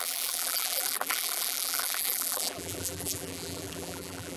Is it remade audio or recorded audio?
remade